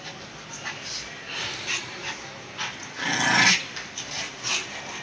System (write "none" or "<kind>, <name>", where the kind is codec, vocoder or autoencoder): vocoder, BigVGAN v2